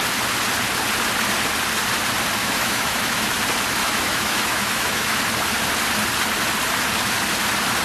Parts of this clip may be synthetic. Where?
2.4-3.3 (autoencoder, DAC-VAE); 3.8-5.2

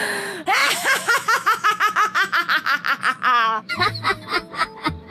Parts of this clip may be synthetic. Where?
0.6-3.7 (autoencoder, DAC-VAE)